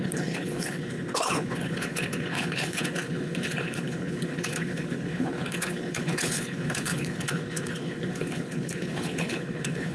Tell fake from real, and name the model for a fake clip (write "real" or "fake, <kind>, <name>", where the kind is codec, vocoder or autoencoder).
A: fake, codec, HILCodec